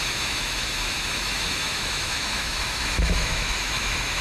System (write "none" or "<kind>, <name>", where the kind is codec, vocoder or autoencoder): autoencoder, DAC-VAE